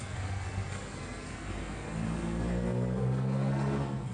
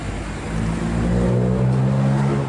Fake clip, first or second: first